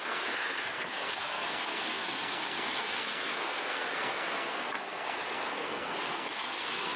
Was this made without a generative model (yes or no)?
no